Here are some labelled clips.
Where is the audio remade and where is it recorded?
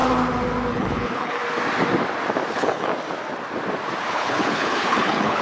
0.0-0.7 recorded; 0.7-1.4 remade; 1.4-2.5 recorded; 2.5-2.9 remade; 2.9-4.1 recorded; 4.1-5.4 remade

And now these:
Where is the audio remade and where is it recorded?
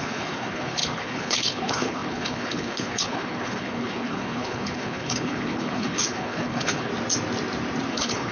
0.0-6.9 remade; 6.9-7.9 recorded; 7.9-8.3 remade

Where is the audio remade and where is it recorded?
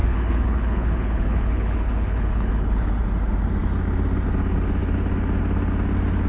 0.0-3.0 remade; 3.0-6.3 recorded